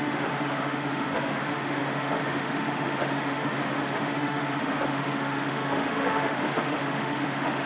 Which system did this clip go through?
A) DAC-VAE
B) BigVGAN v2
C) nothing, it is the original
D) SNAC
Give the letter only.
A